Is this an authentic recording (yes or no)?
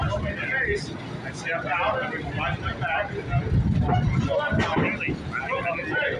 yes